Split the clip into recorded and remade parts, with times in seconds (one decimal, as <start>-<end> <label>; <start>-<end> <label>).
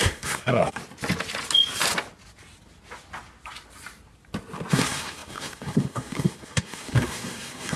0.0-0.8 remade; 0.8-4.7 recorded; 4.7-7.8 remade